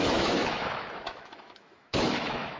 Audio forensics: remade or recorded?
remade